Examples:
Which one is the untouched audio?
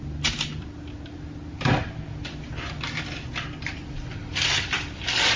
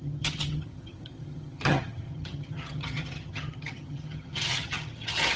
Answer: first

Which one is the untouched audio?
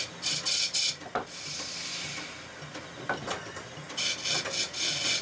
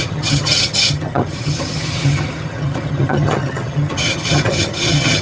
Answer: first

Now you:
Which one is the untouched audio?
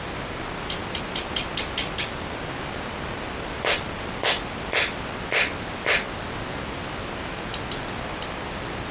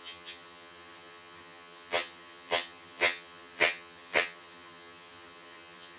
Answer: first